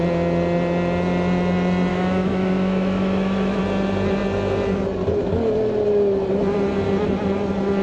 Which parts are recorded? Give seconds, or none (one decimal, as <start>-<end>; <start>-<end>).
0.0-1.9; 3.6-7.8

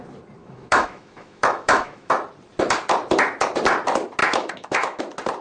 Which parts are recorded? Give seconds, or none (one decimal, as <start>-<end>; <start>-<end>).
0.0-0.4; 2.1-4.2; 5.0-5.4

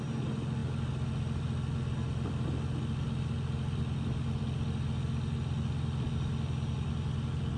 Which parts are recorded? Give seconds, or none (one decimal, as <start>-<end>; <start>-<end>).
0.0-7.6

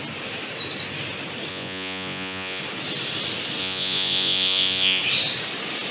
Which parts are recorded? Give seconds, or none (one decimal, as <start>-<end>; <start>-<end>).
0.0-1.5; 2.6-3.6; 5.0-5.9

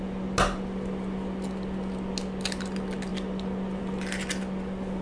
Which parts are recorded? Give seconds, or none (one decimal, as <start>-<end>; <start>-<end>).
0.0-5.0